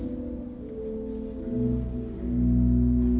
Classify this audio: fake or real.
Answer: real